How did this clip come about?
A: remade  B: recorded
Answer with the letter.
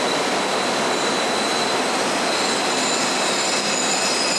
B